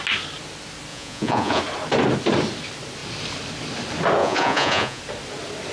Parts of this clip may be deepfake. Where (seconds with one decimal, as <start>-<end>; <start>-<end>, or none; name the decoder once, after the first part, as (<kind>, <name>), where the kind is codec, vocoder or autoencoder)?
0.9-1.6 (vocoder, Vocos); 4.2-5.0